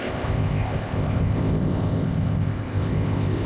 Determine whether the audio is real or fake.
fake